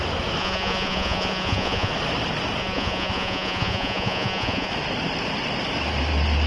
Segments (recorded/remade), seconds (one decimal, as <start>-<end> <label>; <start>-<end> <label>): 0.0-0.4 recorded; 0.4-1.9 remade; 1.9-2.6 recorded; 2.6-4.7 remade; 4.7-6.5 recorded